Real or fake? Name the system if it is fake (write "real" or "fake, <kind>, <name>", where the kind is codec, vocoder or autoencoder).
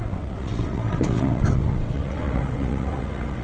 fake, vocoder, WaveNeXt